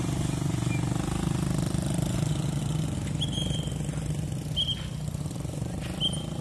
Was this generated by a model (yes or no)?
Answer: no